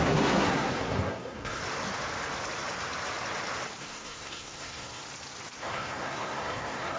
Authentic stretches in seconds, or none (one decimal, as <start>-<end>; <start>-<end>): 1.6-3.8; 5.0-5.6